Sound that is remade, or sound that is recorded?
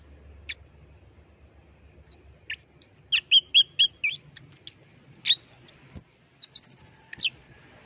recorded